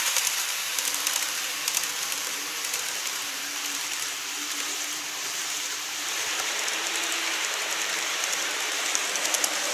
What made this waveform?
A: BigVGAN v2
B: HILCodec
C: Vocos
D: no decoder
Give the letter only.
A